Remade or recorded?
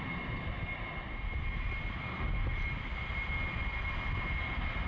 recorded